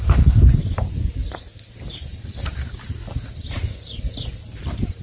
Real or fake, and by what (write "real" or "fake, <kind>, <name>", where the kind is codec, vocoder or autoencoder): real